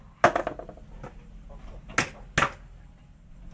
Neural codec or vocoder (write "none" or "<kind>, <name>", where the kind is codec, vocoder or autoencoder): none